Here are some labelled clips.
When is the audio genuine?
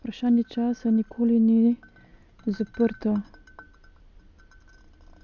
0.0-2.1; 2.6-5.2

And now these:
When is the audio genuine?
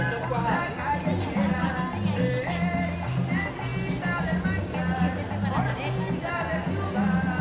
0.0-7.4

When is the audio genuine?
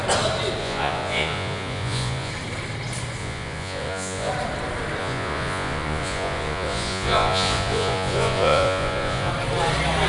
0.0-0.6; 2.3-3.2; 4.3-5.0; 9.3-10.1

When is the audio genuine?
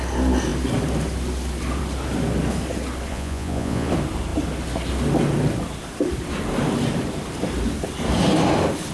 0.0-3.1; 3.9-8.9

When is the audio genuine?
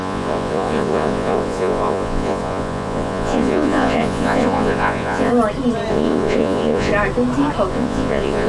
5.3-5.9; 6.9-7.7